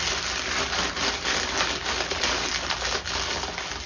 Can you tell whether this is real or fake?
real